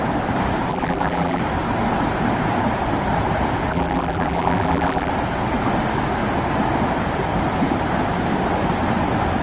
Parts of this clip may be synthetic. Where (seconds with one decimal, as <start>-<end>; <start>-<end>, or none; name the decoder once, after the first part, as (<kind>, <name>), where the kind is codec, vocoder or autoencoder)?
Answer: 0.7-1.4 (vocoder, BigVGAN v2); 3.7-5.1